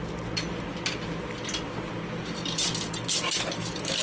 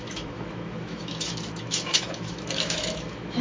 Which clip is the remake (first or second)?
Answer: second